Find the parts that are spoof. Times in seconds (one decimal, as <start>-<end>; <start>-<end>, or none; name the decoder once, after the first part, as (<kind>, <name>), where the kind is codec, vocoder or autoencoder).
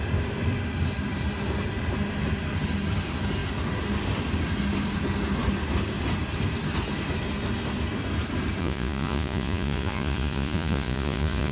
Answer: 8.6-11.5 (vocoder, Vocos)